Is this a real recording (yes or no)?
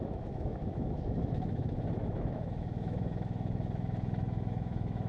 no